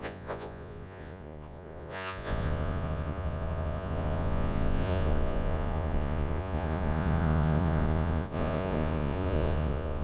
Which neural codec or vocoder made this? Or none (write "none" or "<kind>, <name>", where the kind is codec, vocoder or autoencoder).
vocoder, Vocos